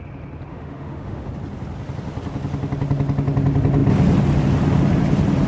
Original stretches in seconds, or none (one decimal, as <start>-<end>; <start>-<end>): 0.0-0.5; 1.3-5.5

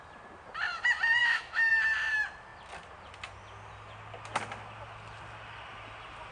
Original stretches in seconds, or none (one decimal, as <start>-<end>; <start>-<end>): 0.0-1.2; 1.7-6.3

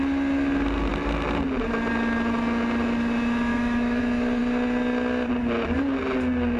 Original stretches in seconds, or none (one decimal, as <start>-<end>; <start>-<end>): 0.0-3.5; 4.0-6.6

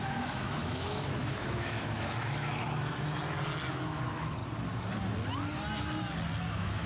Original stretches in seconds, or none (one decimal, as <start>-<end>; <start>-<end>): 3.2-3.7; 4.4-6.5

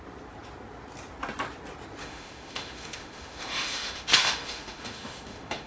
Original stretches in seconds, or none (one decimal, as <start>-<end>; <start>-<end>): 0.0-2.0

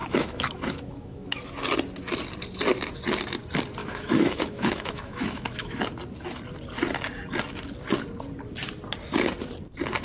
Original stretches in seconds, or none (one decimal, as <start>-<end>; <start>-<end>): 1.4-3.8; 5.8-10.0